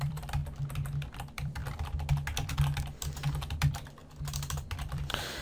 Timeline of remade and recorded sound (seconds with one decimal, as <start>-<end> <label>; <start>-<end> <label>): 0.0-0.4 remade; 0.4-1.1 recorded; 1.1-1.6 remade; 1.6-3.3 recorded; 3.3-5.4 remade